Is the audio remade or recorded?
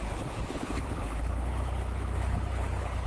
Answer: remade